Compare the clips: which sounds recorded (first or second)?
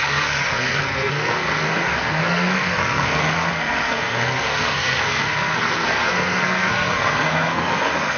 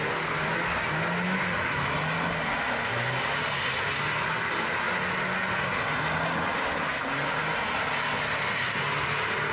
second